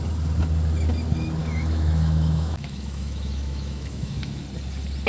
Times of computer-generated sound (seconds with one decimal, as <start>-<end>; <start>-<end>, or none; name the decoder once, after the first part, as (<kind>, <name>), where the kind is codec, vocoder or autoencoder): 1.4-4.4 (autoencoder, DAC-VAE)